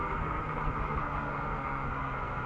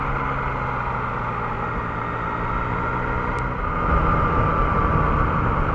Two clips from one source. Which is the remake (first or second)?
first